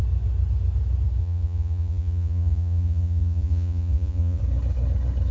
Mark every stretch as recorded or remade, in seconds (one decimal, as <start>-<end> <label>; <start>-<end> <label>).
0.0-1.2 recorded; 1.2-4.4 remade; 4.4-5.3 recorded